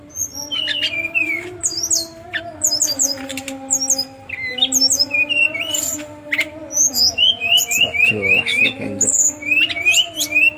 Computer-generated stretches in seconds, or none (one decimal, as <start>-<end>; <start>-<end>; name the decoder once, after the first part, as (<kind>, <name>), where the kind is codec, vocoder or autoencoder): none